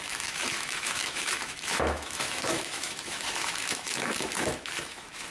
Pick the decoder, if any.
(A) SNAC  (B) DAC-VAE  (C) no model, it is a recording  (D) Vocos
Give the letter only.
B